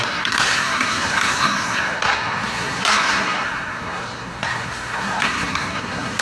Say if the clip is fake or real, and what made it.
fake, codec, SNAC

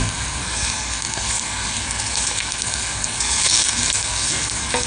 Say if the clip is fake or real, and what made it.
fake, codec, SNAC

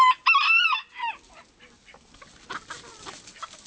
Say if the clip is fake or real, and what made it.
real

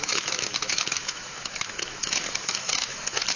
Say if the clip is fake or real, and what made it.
fake, autoencoder, DAC-VAE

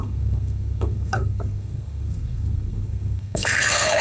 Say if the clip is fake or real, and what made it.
fake, codec, SNAC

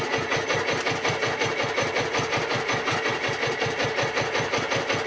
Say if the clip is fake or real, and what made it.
real